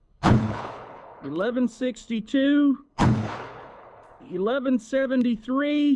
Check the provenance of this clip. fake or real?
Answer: fake